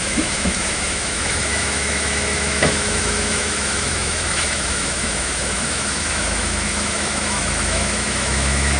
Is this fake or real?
fake